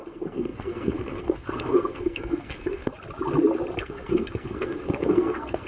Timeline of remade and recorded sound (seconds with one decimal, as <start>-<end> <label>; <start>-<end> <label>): 0.0-2.9 remade; 2.9-3.8 recorded; 3.8-5.7 remade